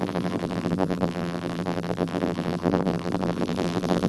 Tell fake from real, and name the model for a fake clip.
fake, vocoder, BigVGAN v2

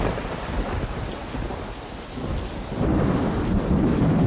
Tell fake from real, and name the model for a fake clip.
fake, vocoder, BigVGAN v2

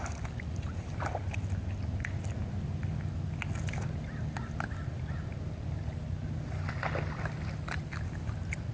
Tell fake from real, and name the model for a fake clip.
real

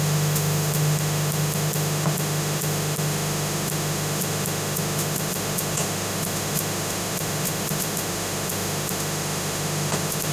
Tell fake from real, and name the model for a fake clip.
fake, autoencoder, DAC-VAE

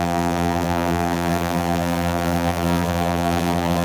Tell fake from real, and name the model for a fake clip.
fake, vocoder, BigVGAN v2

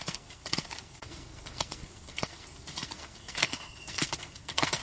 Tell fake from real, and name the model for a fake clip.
fake, codec, SNAC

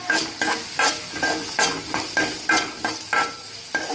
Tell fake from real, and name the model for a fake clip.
real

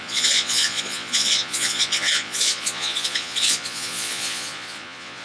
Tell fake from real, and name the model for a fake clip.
fake, vocoder, Vocos